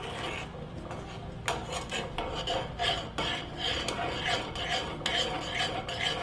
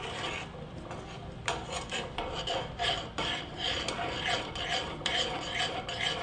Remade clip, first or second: second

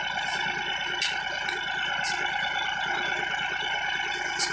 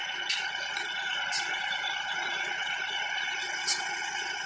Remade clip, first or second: second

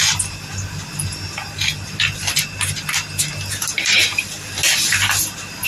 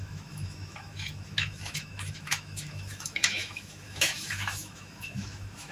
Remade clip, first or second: second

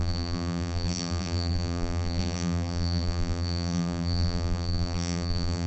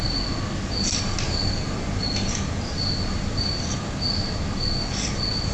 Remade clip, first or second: first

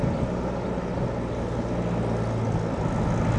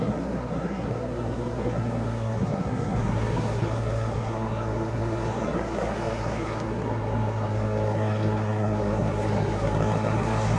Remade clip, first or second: second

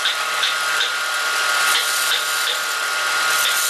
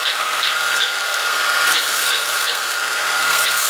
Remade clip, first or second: second